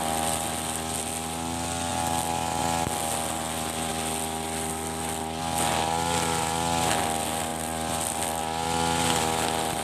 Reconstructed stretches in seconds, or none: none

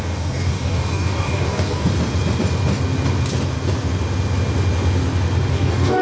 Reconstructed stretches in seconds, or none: 0.0-1.9 (codec, DAC); 5.5-6.0